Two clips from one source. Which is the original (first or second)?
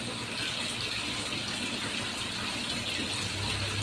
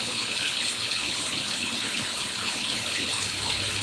first